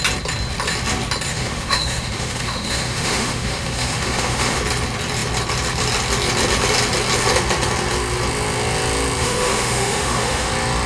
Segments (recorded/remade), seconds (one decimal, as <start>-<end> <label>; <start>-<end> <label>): 0.0-1.3 recorded; 1.3-4.6 remade; 4.6-9.2 recorded; 9.2-10.5 remade; 10.5-10.9 recorded